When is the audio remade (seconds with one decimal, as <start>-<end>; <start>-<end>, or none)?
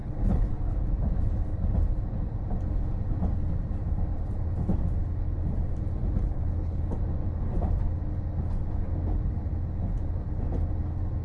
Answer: 0.0-0.5; 6.2-6.8